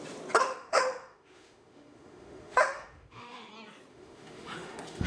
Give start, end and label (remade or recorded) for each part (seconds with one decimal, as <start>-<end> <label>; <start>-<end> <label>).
0.0-0.4 recorded; 0.4-3.5 remade; 3.5-3.9 recorded; 3.9-5.1 remade